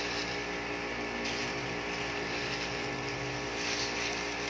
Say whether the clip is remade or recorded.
recorded